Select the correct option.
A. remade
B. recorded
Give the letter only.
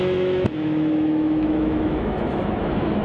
A